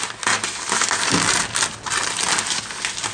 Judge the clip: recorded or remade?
recorded